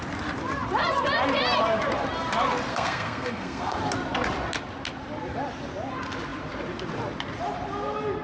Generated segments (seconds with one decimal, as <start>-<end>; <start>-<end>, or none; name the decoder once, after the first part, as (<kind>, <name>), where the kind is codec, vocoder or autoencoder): 2.7-3.8 (codec, SNAC)